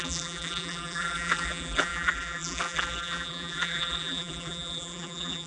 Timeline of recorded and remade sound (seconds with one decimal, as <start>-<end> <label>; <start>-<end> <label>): 0.0-5.5 remade